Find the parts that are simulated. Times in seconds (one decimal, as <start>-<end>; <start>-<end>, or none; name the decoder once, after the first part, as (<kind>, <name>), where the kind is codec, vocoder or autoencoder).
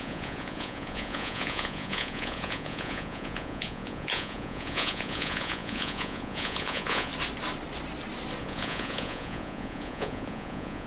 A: 0.0-7.1 (vocoder, Vocos); 8.4-10.9